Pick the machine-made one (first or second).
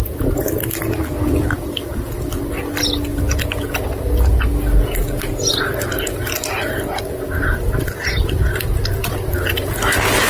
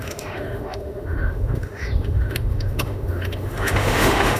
second